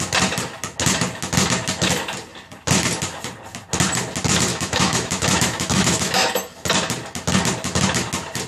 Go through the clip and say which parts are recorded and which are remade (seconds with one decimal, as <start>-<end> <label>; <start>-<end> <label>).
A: 0.0-4.5 recorded; 4.5-6.3 remade; 6.3-8.5 recorded